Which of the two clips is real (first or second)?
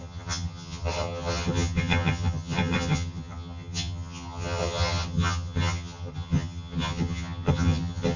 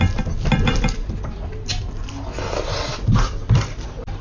second